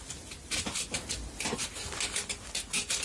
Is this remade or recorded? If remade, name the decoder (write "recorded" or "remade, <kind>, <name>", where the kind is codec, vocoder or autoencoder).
recorded